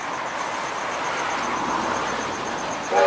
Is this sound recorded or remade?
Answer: recorded